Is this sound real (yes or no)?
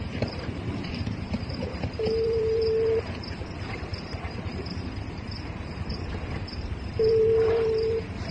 no